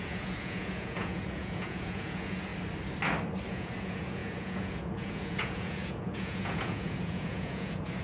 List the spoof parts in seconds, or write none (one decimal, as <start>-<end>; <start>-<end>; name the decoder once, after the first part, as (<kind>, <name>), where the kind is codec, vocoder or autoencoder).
0.0-2.5 (vocoder, Vocos); 3.5-8.0